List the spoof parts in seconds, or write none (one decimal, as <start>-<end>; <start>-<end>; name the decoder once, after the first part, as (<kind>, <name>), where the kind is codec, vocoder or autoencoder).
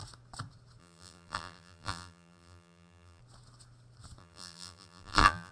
0.8-3.2 (vocoder, BigVGAN v2); 4.2-5.5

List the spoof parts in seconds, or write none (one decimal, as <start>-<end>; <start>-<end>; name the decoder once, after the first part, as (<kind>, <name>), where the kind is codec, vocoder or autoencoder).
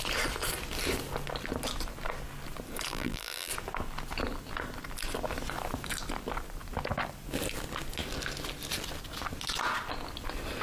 2.9-3.5 (vocoder, BigVGAN v2)